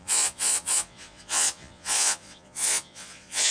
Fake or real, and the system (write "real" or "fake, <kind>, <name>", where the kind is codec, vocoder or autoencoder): fake, vocoder, Vocos